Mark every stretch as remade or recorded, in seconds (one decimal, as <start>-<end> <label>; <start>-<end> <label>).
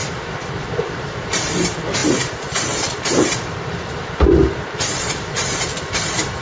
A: 0.0-0.7 recorded; 0.7-6.4 remade